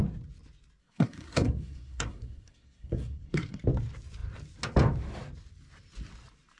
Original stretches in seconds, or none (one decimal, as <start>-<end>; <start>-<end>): 0.0-0.8; 3.6-6.6